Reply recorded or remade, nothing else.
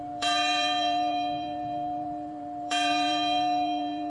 remade